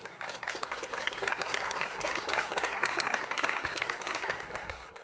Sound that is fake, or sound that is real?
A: fake